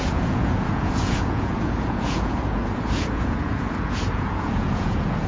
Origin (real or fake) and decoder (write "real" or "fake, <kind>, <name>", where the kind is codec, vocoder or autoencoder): fake, vocoder, Vocos